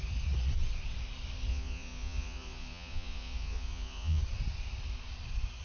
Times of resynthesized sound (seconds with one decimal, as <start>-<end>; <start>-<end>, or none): 1.5-4.2